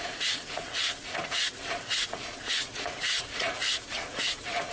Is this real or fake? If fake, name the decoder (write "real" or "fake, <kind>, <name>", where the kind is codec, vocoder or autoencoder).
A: fake, vocoder, Vocos